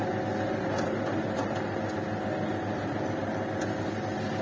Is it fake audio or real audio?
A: real